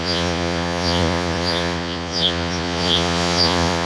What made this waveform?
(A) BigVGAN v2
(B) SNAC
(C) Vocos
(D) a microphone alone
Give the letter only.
C